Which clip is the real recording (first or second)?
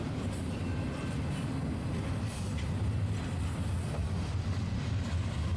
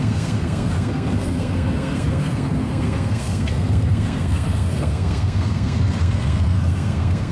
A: first